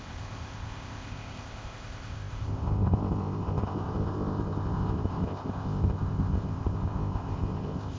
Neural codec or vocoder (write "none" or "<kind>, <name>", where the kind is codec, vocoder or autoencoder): codec, ZipCodec